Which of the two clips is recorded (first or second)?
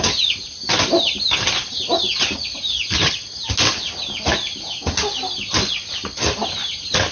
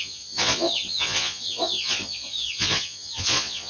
first